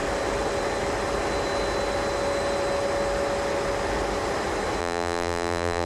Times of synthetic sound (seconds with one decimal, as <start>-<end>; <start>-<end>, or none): 4.8-5.9